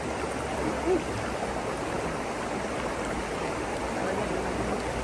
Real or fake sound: real